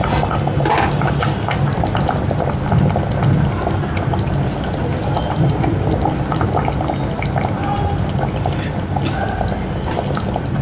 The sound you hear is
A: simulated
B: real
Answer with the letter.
B